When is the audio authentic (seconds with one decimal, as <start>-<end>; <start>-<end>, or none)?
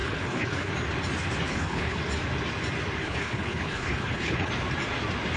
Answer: 0.7-1.5; 2.0-3.0; 4.5-5.4